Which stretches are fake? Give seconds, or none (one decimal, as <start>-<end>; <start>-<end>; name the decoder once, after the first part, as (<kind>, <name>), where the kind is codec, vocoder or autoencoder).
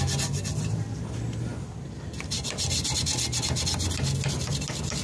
none